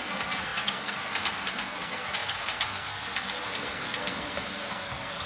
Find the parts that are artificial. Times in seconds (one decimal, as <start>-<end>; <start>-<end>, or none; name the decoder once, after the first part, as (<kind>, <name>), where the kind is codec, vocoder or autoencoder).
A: 0.0-5.3 (codec, SNAC)